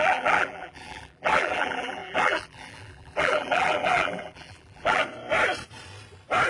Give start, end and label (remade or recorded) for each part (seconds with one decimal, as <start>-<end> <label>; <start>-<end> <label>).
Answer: 0.0-5.0 remade; 5.0-6.5 recorded